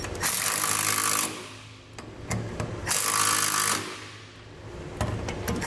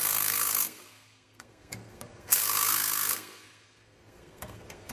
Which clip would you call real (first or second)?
first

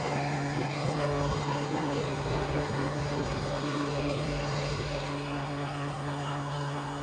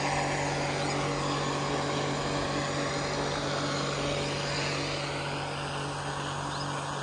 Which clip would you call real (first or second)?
second